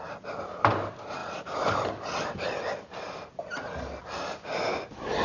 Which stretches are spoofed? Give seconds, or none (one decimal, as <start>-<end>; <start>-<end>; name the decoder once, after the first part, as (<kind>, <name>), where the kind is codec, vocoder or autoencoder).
none